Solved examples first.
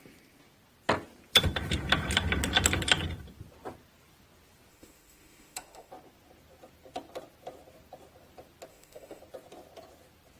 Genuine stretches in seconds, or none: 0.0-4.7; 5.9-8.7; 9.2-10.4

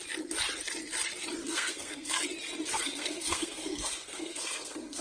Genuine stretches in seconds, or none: 0.0-1.4; 2.2-2.7

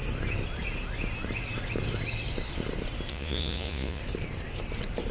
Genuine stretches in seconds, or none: 0.0-3.1; 4.0-5.1

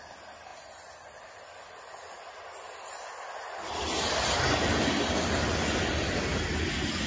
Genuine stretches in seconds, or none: 0.0-7.1

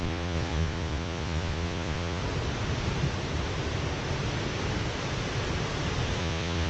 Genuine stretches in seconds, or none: 2.2-6.2

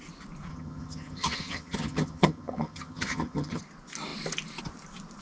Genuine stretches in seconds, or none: 0.0-0.5; 3.6-5.2

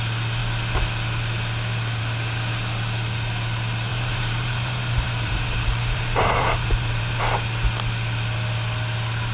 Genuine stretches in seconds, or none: 0.0-3.9; 7.2-9.3

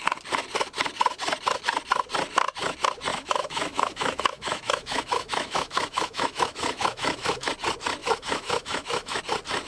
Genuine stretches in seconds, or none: 0.0-3.1; 7.5-8.0; 9.2-9.7